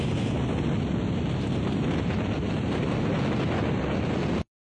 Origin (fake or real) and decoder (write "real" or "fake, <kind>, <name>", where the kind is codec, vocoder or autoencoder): real